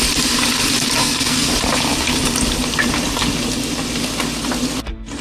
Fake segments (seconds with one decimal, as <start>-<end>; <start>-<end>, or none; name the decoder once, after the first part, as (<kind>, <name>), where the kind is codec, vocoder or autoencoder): 1.0-1.5 (codec, SNAC)